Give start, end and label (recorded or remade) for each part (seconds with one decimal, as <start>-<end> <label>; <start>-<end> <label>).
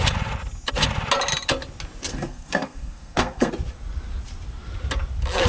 0.0-2.1 recorded; 2.1-3.5 remade; 3.5-5.5 recorded